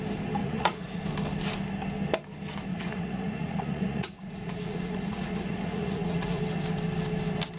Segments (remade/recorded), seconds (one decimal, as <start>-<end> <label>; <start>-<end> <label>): 0.0-0.4 recorded; 0.4-1.0 remade; 1.0-2.7 recorded; 2.7-6.4 remade; 6.4-7.6 recorded